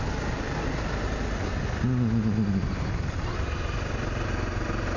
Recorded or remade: recorded